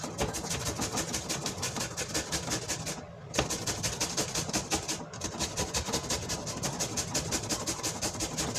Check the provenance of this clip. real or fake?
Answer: real